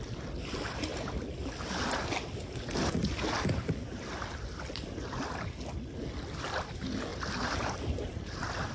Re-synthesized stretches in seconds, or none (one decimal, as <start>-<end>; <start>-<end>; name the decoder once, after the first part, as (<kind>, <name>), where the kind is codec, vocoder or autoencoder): none